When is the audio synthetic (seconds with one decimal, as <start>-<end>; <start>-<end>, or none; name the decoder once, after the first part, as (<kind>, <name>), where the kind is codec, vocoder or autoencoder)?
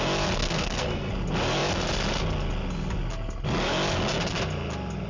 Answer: 0.4-1.1 (codec, SNAC)